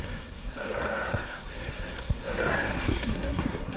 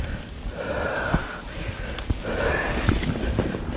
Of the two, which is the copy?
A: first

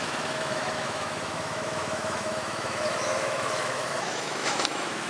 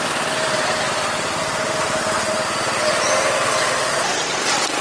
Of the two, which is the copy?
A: first